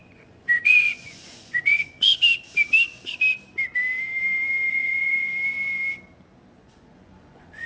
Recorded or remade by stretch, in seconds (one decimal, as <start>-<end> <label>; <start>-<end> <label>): 0.0-2.1 remade; 2.1-4.7 recorded; 4.7-5.3 remade; 5.3-6.6 recorded; 6.6-7.7 remade